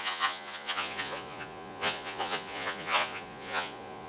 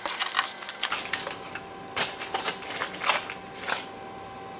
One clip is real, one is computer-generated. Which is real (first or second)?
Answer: second